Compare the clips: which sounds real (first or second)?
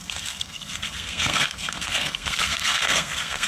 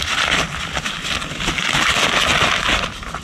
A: second